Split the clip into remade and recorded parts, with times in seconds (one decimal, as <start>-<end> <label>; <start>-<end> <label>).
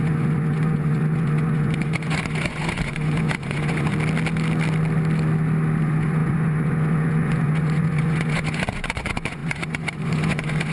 0.0-3.9 remade; 3.9-5.8 recorded; 5.8-10.7 remade